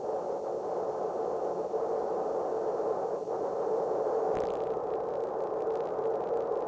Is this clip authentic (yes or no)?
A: yes